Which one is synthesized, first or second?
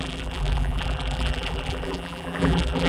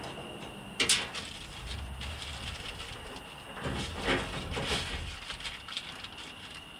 first